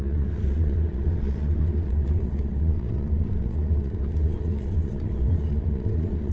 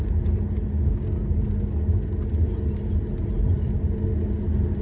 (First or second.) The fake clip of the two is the first